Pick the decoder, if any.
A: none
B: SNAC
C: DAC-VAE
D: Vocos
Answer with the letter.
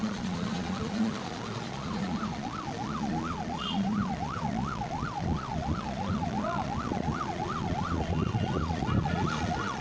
D